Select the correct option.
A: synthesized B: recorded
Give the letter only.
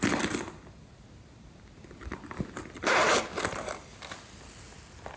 B